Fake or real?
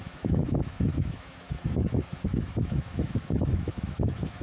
fake